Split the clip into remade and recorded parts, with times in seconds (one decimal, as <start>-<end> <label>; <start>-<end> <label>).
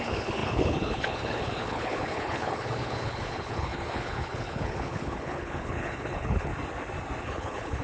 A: 0.0-6.5 remade; 6.5-7.2 recorded; 7.2-7.8 remade